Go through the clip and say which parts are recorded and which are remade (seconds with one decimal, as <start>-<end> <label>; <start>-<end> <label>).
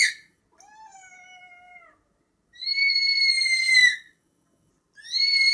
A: 0.0-0.4 remade; 0.4-3.7 recorded; 3.7-4.7 remade; 4.7-5.5 recorded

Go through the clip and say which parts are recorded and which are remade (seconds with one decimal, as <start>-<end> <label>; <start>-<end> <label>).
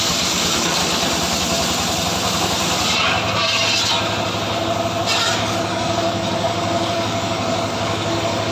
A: 0.0-0.8 remade; 0.8-5.3 recorded; 5.3-8.5 remade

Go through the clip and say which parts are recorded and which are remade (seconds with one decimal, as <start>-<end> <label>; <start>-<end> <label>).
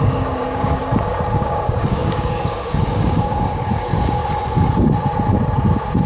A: 0.0-0.8 remade; 0.8-1.3 recorded; 1.3-4.2 remade; 4.2-6.1 recorded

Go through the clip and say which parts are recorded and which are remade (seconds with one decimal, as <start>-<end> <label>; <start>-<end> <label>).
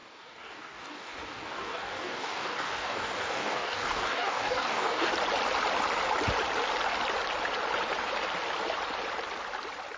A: 0.0-5.1 remade; 5.1-10.0 recorded